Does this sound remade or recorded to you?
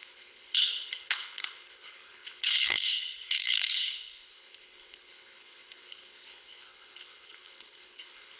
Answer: remade